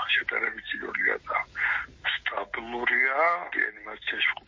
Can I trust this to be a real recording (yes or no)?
yes